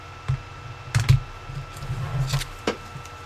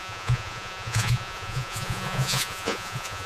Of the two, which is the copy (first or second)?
second